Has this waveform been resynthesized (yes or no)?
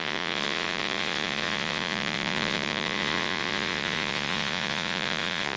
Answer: yes